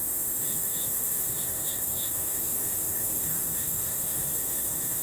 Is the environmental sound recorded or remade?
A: remade